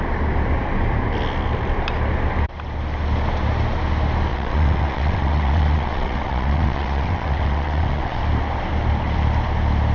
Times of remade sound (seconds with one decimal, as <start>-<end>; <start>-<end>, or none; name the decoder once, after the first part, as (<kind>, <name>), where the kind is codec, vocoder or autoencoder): 4.3-8.2 (vocoder, WaveNeXt)